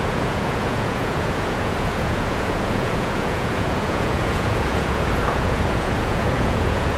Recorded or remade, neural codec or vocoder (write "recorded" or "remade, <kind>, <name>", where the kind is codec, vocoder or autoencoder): remade, vocoder, Vocos